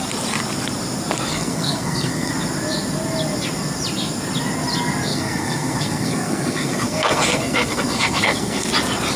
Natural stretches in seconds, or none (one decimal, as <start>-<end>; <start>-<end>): 0.0-1.3; 2.3-5.1; 8.7-9.2